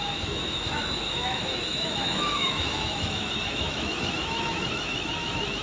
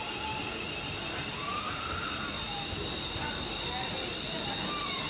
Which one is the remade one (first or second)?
first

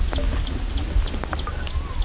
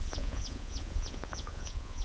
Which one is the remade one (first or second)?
second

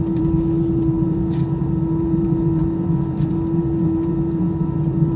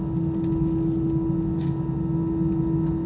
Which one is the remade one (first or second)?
first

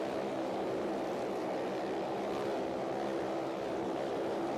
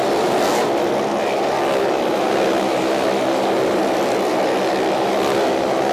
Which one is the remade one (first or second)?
first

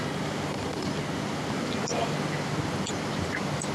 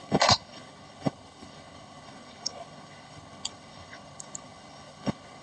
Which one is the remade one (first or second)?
second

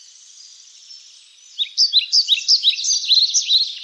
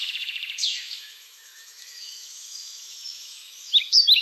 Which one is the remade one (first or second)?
second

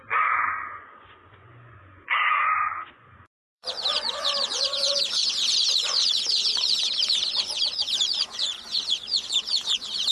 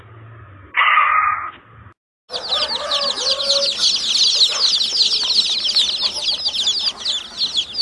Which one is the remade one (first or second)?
first